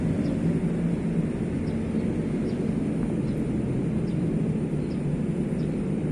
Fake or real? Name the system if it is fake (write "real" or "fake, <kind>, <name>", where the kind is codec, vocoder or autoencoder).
real